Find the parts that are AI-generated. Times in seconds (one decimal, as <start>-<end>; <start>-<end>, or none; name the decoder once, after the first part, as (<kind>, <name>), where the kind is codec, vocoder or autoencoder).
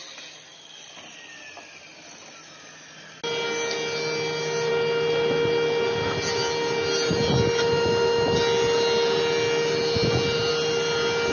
none